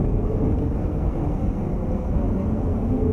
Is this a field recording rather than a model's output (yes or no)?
no